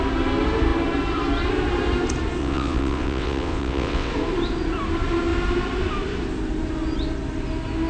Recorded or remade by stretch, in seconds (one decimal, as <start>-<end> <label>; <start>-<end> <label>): 0.0-2.4 recorded; 2.4-4.1 remade; 4.1-7.9 recorded